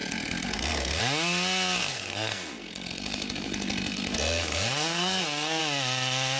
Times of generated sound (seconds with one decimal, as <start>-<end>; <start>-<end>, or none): 0.0-1.0; 1.8-5.6